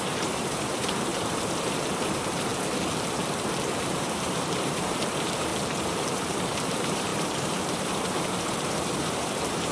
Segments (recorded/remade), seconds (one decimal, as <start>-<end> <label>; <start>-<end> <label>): 0.0-2.5 remade; 2.5-3.8 recorded; 3.8-5.5 remade; 5.5-6.1 recorded; 6.1-9.7 remade

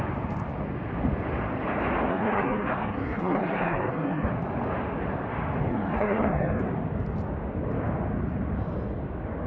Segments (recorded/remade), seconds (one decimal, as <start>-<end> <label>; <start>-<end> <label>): 0.0-2.1 recorded; 2.1-4.3 remade; 4.3-5.7 recorded; 5.7-6.6 remade; 6.6-9.5 recorded

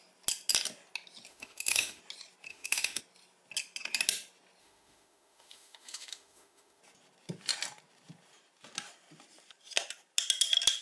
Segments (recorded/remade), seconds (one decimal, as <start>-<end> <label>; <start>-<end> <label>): 0.0-1.3 recorded; 1.3-2.0 remade; 2.0-2.5 recorded; 2.5-3.0 remade; 3.0-4.6 recorded; 4.6-6.8 remade; 6.8-10.8 recorded

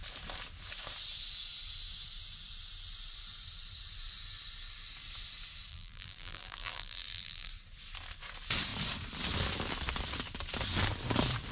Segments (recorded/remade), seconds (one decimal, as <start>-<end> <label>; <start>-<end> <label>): 0.0-5.7 recorded; 5.7-7.5 remade; 7.5-11.5 recorded